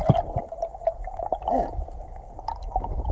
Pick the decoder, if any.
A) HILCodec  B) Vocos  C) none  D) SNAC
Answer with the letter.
C